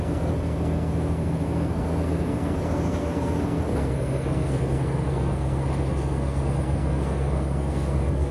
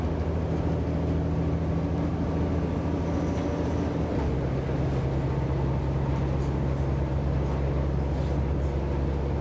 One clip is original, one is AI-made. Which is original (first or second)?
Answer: second